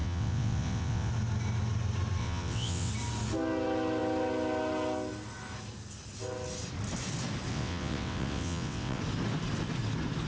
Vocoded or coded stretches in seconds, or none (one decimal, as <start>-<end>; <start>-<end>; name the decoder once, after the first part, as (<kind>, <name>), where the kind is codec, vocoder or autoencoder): 0.0-1.1 (vocoder, WaveNeXt); 2.2-2.9; 7.5-9.0